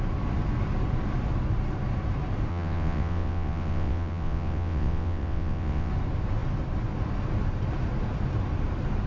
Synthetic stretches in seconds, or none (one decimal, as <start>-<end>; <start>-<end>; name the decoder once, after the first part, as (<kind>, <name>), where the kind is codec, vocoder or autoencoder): 2.5-5.9 (vocoder, WaveNeXt)

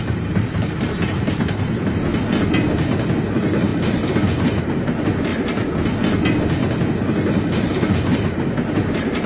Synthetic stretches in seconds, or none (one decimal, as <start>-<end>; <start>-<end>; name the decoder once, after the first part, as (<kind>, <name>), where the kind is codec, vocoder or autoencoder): 0.0-2.1 (vocoder, BigVGAN v2); 3.3-3.7; 4.6-5.3; 7.7-9.3

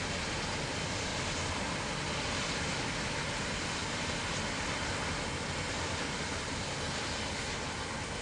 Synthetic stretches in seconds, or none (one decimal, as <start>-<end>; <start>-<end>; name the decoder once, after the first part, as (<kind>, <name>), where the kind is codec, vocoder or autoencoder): none

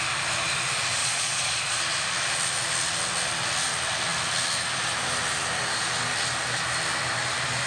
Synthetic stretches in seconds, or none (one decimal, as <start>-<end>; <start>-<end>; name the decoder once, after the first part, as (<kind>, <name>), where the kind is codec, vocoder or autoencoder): 1.0-1.8 (vocoder, Vocos)

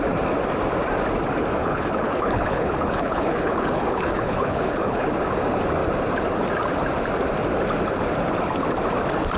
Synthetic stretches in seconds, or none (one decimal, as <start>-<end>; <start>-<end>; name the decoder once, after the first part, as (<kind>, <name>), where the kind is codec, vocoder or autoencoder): 1.6-5.1 (codec, HILCodec)

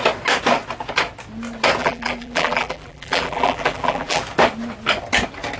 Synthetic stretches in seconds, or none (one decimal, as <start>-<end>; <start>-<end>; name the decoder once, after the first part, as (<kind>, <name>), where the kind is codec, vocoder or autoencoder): 1.8-4.2 (vocoder, BigVGAN v2)